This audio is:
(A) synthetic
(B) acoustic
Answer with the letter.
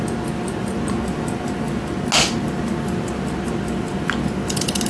B